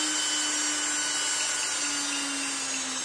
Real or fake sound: real